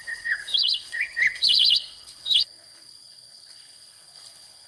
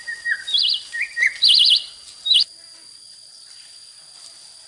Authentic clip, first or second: second